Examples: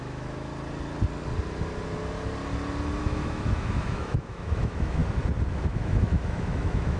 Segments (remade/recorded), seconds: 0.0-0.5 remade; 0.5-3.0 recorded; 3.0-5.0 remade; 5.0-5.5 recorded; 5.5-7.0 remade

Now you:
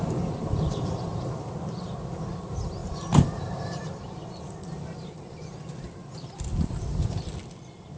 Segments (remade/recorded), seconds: 0.0-2.8 recorded; 2.8-3.8 remade; 3.8-8.0 recorded

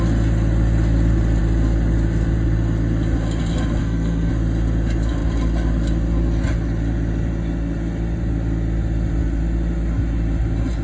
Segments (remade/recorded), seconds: 0.0-3.8 recorded; 3.8-4.3 remade; 4.3-10.8 recorded

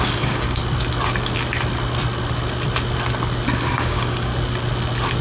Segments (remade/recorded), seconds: 0.0-0.6 remade; 0.6-3.7 recorded; 3.7-4.3 remade; 4.3-5.2 recorded

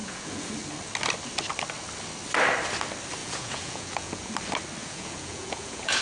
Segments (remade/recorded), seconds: 0.0-0.5 remade; 0.5-3.2 recorded; 3.2-4.3 remade; 4.3-4.8 recorded; 4.8-6.0 remade